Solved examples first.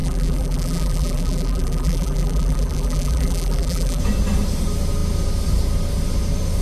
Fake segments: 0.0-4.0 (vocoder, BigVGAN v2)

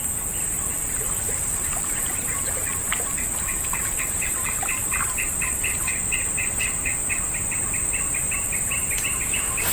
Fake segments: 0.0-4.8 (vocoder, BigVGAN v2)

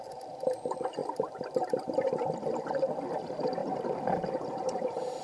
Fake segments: 0.0-5.2 (vocoder, BigVGAN v2)